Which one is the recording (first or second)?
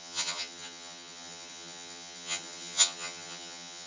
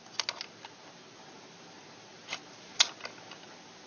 second